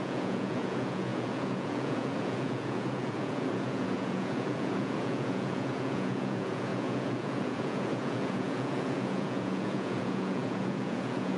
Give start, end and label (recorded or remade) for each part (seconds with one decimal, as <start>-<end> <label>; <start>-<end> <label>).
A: 0.0-11.4 remade